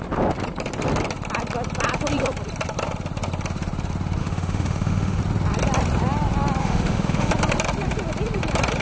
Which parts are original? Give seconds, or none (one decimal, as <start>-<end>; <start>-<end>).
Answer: 0.0-4.2; 5.2-6.6; 7.3-8.8